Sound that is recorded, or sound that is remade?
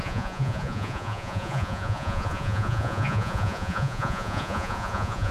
remade